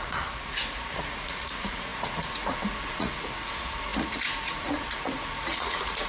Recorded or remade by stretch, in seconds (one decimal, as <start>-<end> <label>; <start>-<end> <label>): 0.0-6.1 remade